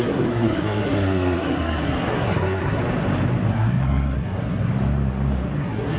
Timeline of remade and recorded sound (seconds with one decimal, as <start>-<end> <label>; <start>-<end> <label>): 0.0-2.8 remade; 2.8-3.5 recorded; 3.5-4.7 remade; 4.7-5.6 recorded; 5.6-6.0 remade